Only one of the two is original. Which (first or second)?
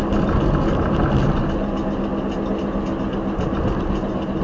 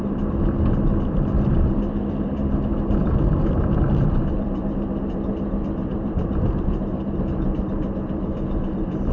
first